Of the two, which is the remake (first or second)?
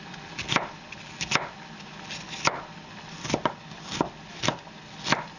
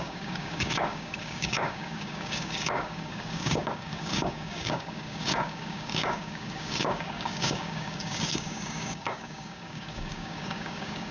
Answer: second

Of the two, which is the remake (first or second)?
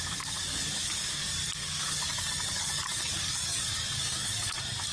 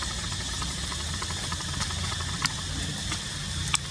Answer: first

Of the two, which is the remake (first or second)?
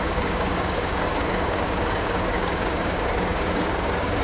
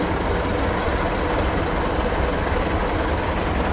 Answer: first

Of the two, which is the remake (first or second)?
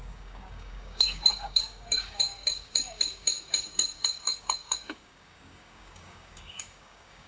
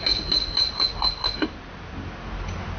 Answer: first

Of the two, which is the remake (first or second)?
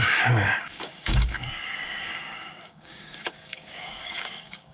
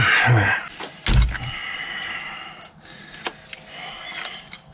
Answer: first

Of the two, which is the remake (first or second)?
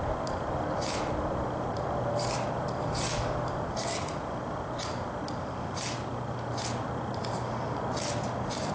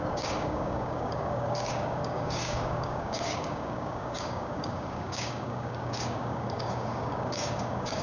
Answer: second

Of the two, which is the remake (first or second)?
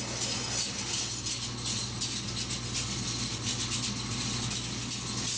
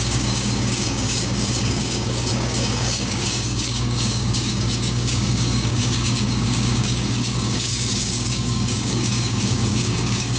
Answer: second